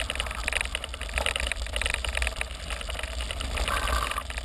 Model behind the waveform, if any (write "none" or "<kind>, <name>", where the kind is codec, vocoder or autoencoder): none